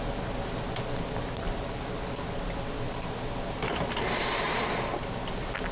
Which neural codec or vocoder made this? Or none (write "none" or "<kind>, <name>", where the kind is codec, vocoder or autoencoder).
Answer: none